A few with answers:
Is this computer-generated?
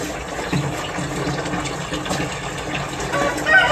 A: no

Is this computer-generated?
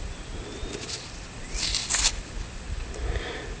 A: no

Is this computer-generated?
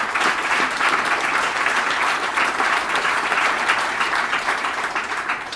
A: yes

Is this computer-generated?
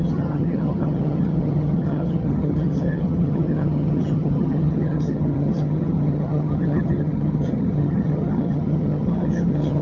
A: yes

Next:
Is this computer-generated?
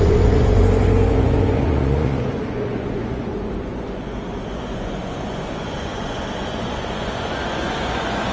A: yes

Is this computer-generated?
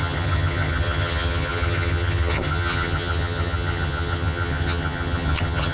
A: yes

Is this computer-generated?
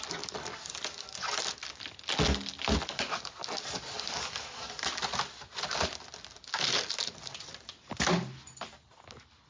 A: no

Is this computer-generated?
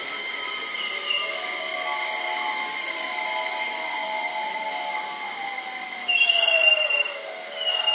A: yes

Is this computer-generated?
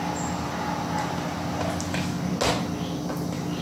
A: no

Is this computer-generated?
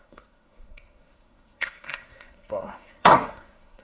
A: yes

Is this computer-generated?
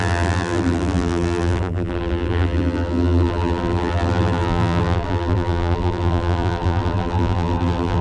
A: yes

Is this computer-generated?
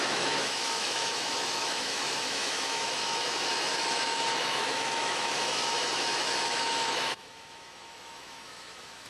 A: yes